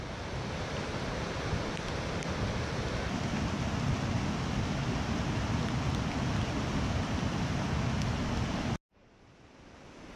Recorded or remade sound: recorded